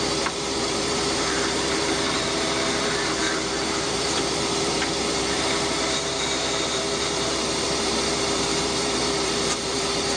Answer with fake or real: fake